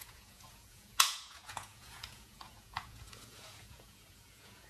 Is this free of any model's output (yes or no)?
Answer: no